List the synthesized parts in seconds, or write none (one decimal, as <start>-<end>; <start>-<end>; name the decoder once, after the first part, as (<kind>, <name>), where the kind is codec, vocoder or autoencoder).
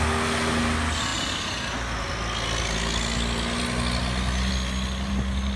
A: none